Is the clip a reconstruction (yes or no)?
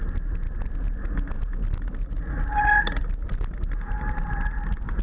no